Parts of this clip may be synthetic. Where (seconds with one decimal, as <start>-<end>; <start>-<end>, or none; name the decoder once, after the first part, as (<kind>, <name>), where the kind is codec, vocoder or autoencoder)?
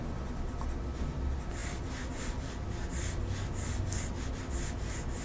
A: none